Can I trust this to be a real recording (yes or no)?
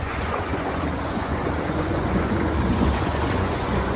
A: no